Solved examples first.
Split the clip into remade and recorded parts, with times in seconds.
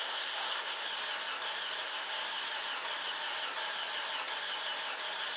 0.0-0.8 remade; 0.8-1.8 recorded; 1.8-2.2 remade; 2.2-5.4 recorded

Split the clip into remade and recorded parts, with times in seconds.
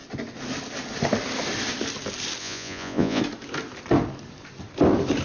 0.0-2.4 recorded; 2.4-3.2 remade; 3.2-5.2 recorded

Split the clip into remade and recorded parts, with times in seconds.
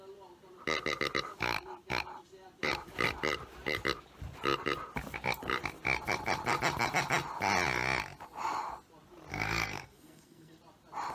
0.0-9.3 recorded; 9.3-10.6 remade; 10.6-11.1 recorded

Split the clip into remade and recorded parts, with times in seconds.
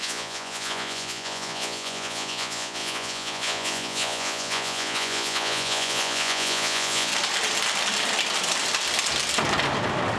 0.0-7.1 remade; 7.1-10.2 recorded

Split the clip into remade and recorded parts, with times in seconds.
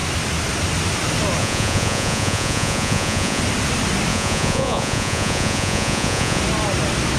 0.0-1.4 recorded; 1.4-3.4 remade; 3.4-4.1 recorded; 4.1-6.4 remade; 6.4-7.2 recorded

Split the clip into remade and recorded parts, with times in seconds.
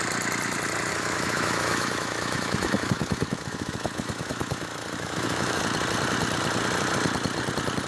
0.0-0.9 recorded; 0.9-5.6 remade; 5.6-7.9 recorded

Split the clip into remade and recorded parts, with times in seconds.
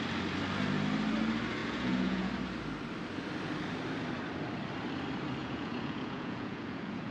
0.0-1.6 recorded; 1.6-2.3 remade; 2.3-5.4 recorded; 5.4-7.1 remade